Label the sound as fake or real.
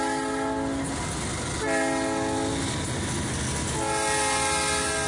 real